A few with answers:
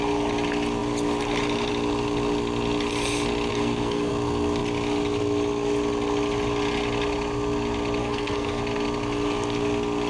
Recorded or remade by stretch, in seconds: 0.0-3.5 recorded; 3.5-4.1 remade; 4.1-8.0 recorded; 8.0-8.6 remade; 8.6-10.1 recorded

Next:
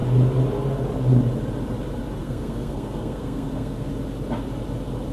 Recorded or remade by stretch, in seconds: 0.0-2.2 recorded; 2.2-3.9 remade; 3.9-5.1 recorded

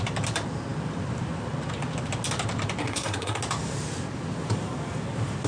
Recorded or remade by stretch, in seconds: 0.0-2.8 recorded; 2.8-3.4 remade; 3.4-5.5 recorded

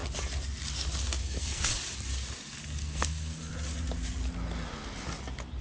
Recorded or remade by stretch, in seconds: 0.0-1.2 recorded; 1.2-1.7 remade; 1.7-2.8 recorded; 2.8-3.5 remade; 3.5-5.6 recorded

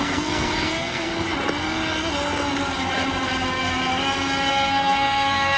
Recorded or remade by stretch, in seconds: 0.0-1.1 remade; 1.1-4.5 recorded; 4.5-5.6 remade

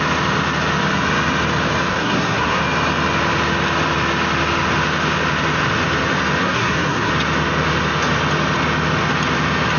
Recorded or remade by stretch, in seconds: 0.0-1.9 recorded; 1.9-2.6 remade; 2.6-6.4 recorded; 6.4-7.1 remade; 7.1-9.8 recorded

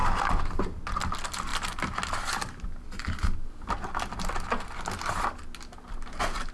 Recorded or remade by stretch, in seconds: 0.0-6.5 recorded